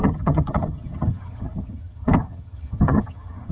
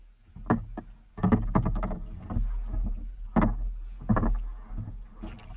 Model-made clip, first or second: first